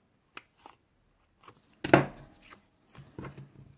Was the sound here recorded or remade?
recorded